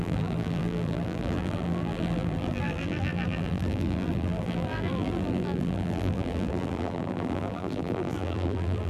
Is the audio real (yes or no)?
no